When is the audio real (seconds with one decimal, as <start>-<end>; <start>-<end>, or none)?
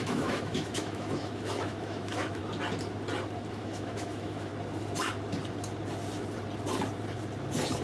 2.4-3.5; 4.5-7.8